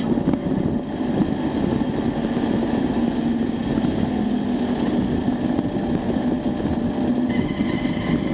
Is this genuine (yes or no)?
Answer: yes